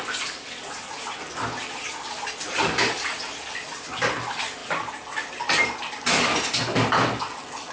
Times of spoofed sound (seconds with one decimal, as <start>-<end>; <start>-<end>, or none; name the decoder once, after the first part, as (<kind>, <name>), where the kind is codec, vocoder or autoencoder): none